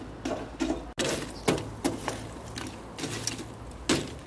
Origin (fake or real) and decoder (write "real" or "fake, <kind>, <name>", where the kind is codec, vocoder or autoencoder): real